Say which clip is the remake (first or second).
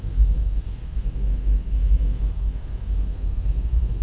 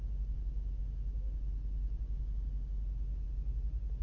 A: first